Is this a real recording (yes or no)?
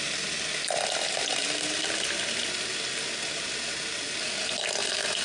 yes